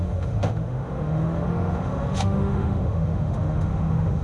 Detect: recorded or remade remade